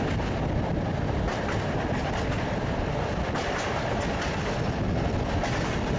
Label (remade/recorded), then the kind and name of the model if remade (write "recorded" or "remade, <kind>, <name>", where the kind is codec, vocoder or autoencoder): recorded